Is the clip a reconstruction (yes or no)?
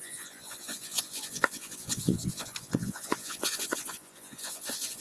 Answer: yes